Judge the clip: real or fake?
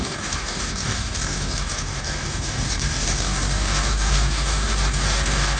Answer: fake